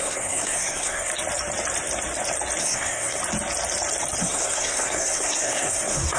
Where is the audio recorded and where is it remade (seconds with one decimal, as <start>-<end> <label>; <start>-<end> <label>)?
0.0-1.1 remade; 1.1-2.6 recorded; 2.6-3.2 remade; 3.2-4.2 recorded; 4.2-6.2 remade